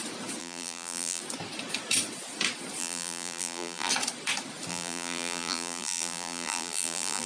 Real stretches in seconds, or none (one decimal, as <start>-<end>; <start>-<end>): 0.0-0.4; 1.2-2.8; 3.9-4.7